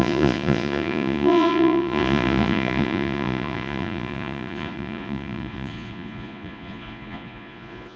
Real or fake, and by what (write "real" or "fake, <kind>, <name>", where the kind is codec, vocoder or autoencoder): fake, vocoder, Vocos